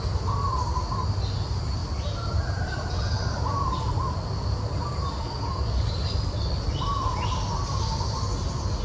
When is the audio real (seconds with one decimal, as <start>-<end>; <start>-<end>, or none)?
0.0-1.8; 3.9-8.8

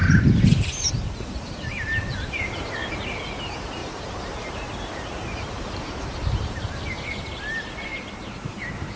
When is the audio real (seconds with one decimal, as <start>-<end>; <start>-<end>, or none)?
2.6-3.8; 7.1-9.0

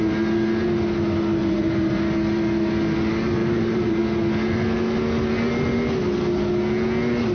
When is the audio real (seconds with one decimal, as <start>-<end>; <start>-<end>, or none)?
0.0-1.4; 2.0-3.4; 4.0-7.3